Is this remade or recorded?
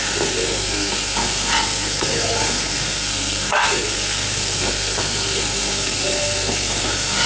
remade